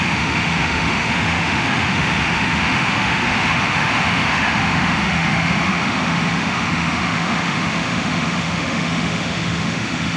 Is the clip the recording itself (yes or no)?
no